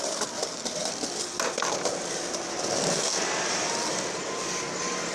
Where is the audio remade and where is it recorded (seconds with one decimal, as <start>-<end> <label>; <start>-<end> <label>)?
0.0-5.1 recorded